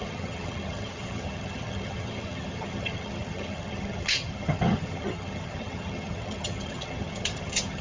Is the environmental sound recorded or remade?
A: remade